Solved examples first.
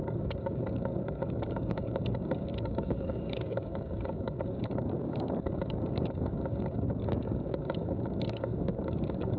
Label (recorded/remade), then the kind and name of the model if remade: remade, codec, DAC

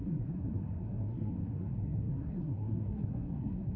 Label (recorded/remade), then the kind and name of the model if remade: remade, codec, SNAC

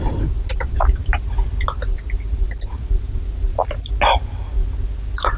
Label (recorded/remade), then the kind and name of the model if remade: recorded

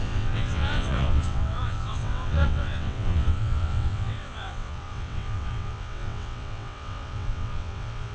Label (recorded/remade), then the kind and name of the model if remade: remade, vocoder, WaveNeXt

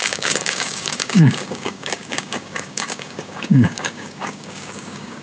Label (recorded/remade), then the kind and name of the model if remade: remade, codec, DAC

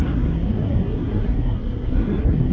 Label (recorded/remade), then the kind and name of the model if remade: remade, codec, SNAC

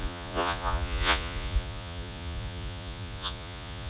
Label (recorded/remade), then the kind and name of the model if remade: remade, vocoder, Vocos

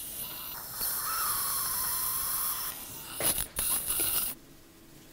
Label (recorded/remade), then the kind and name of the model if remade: recorded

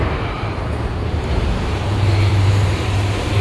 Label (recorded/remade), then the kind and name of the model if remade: remade, vocoder, BigVGAN v2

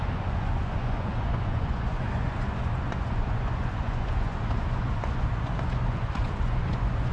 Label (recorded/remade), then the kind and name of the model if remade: remade, vocoder, Vocos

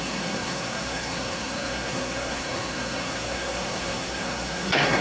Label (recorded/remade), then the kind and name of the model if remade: remade, codec, SNAC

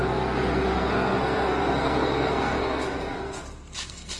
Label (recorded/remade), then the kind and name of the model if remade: remade, codec, SNAC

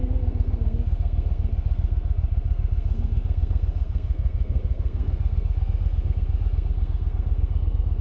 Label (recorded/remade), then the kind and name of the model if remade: remade, codec, SNAC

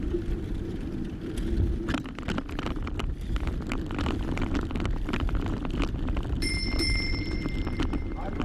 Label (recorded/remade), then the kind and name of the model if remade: remade, vocoder, BigVGAN v2